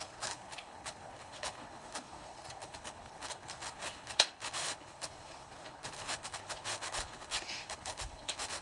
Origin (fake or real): fake